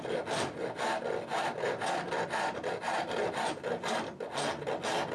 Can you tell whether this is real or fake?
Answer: real